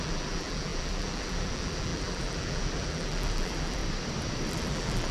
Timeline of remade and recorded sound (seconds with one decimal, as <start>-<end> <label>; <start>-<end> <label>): 0.0-3.8 remade; 3.8-4.5 recorded; 4.5-5.1 remade

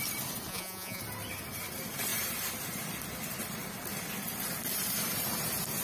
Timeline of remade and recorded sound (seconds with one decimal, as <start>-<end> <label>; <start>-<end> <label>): 0.0-0.5 recorded; 0.5-1.0 remade; 1.0-5.8 recorded

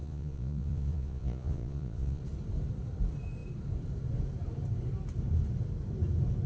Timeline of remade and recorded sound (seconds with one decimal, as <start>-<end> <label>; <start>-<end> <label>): 0.0-2.2 remade; 2.2-6.5 recorded

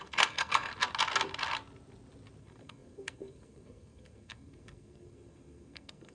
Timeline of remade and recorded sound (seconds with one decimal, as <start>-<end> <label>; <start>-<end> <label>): 0.0-0.7 remade; 0.7-2.4 recorded; 2.4-6.1 remade

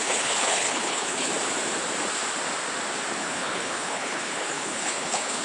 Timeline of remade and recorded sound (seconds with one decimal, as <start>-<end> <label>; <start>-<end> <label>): 0.0-1.3 remade; 1.3-3.2 recorded; 3.2-5.4 remade

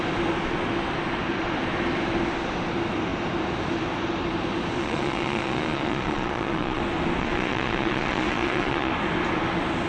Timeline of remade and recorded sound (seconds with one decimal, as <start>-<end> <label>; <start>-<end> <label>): 0.0-4.8 recorded; 4.8-6.8 remade; 6.8-7.2 recorded; 7.2-8.9 remade; 8.9-9.9 recorded